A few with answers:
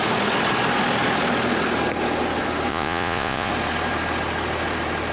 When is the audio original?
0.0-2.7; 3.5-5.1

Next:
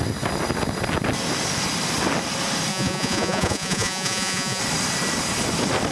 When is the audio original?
0.0-2.7; 4.6-5.9

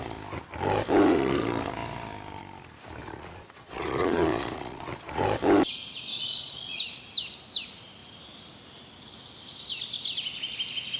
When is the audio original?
0.0-3.0; 5.2-6.1; 6.8-11.0

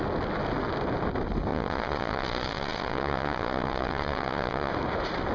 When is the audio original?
0.0-1.5; 4.7-5.3

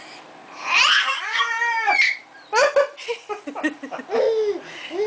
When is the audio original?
0.0-0.4; 1.4-5.1

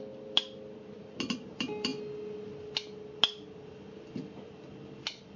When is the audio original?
0.0-5.4

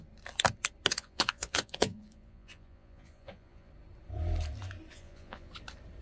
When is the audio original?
0.0-0.9; 3.7-4.9; 5.5-6.0